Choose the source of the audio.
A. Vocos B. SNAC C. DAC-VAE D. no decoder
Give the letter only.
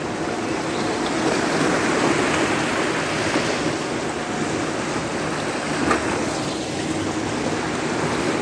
D